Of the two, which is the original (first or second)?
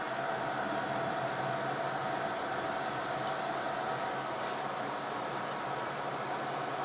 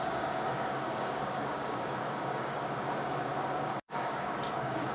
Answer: first